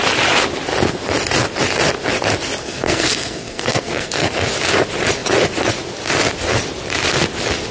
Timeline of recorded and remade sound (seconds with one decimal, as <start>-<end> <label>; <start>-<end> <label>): 0.0-2.6 recorded; 2.6-4.3 remade; 4.3-7.7 recorded

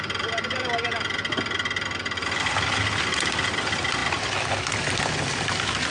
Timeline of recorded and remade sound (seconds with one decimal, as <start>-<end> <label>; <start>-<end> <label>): 0.0-5.9 recorded

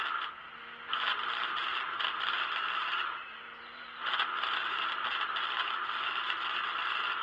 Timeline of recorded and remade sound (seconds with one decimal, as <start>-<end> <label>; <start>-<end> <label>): 0.0-1.7 recorded; 1.7-6.0 remade; 6.0-7.2 recorded

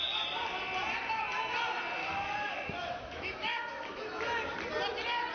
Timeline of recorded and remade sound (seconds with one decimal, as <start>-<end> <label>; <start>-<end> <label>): 0.0-2.0 recorded; 2.0-4.2 remade; 4.2-5.3 recorded

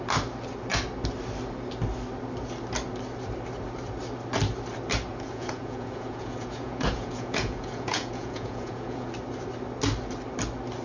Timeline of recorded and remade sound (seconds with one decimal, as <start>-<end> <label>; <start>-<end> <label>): 0.0-5.1 recorded; 5.1-9.1 remade; 9.1-10.8 recorded

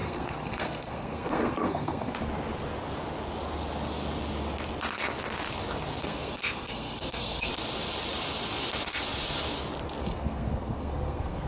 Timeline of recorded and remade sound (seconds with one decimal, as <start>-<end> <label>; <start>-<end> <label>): 0.0-2.2 remade; 2.2-6.0 recorded; 6.0-7.5 remade; 7.5-10.0 recorded; 10.0-11.5 remade

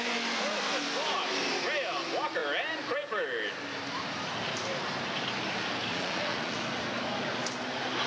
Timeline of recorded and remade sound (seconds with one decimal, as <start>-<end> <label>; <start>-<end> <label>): 0.0-5.9 recorded; 5.9-6.6 remade; 6.6-8.1 recorded